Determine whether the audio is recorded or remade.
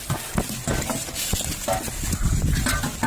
recorded